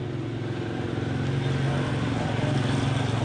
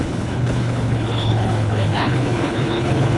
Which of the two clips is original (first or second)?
first